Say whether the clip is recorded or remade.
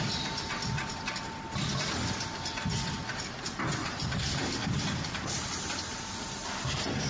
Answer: remade